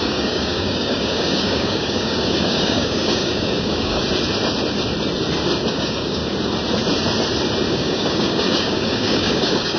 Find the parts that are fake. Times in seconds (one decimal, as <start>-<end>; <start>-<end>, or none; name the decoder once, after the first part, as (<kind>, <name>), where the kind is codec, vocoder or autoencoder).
0.0-4.0 (codec, DAC); 5.7-6.2; 7.7-9.8